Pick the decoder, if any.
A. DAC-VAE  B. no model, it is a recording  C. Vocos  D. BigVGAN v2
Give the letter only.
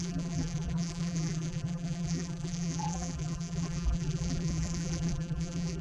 D